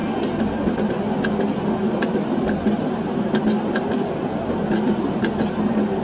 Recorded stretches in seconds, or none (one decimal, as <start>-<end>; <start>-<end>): 0.0-6.0